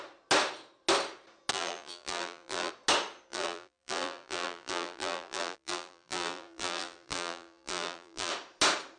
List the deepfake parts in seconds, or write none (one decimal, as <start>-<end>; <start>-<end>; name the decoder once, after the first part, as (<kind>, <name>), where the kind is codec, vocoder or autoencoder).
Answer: 1.5-2.7 (vocoder, BigVGAN v2); 3.3-8.3